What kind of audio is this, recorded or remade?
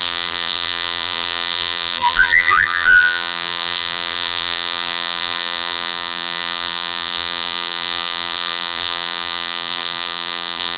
remade